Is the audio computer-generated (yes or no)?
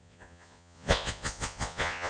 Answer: yes